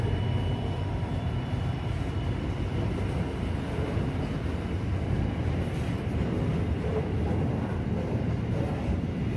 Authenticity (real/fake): real